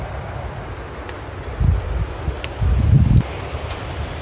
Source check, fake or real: real